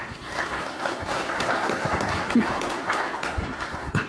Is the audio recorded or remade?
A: remade